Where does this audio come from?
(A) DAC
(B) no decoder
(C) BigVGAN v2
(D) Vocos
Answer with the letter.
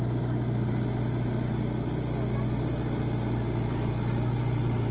B